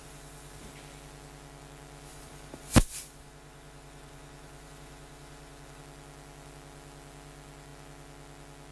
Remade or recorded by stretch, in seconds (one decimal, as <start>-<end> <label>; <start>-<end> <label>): 0.0-0.7 remade; 0.7-2.1 recorded; 2.1-5.8 remade; 5.8-8.7 recorded